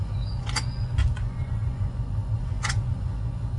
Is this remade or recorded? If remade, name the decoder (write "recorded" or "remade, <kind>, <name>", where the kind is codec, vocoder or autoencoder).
remade, vocoder, Vocos